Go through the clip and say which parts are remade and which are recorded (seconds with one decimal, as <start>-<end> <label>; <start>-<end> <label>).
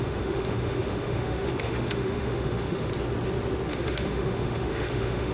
0.0-2.9 remade; 2.9-3.7 recorded; 3.7-5.3 remade